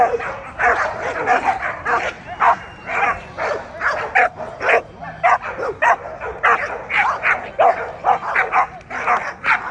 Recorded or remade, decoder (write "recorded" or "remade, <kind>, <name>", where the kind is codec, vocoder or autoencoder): recorded